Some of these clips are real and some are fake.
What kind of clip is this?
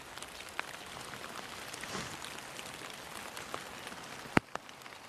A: real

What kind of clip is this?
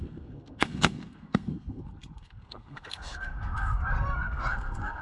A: fake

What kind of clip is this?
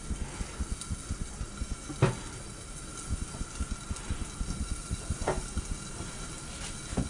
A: real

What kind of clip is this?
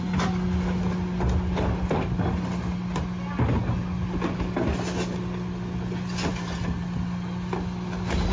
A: real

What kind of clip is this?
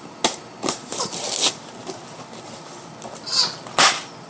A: real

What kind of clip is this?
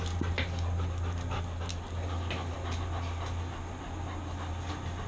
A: real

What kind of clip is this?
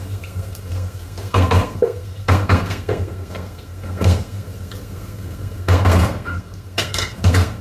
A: fake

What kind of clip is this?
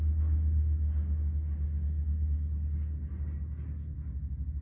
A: real